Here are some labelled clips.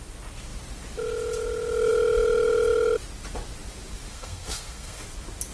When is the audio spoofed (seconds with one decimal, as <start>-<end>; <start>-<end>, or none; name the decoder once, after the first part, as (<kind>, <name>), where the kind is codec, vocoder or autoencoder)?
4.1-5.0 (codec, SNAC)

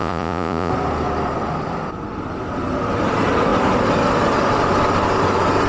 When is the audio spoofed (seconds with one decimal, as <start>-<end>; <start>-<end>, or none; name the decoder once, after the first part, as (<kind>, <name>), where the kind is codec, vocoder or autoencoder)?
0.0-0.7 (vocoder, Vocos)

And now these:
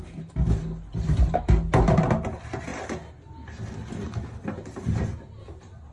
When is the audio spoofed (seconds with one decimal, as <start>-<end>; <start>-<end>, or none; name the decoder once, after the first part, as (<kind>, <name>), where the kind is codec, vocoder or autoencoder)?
none

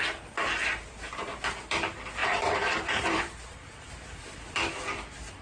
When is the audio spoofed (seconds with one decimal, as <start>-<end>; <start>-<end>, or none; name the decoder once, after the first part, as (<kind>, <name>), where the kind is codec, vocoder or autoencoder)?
2.2-4.2 (vocoder, BigVGAN v2)